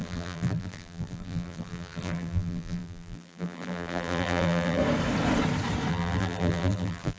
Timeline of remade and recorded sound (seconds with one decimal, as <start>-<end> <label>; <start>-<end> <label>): 0.0-4.8 remade; 4.8-5.9 recorded; 5.9-7.2 remade